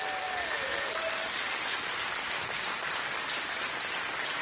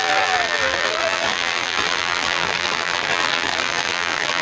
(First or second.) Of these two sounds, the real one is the first